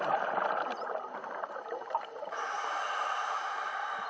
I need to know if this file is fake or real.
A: fake